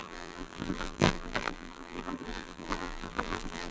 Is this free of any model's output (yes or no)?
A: no